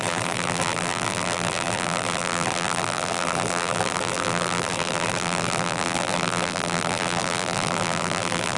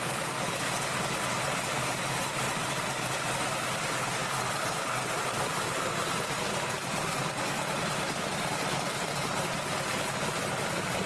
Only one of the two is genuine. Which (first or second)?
second